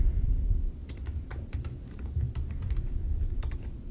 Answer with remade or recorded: recorded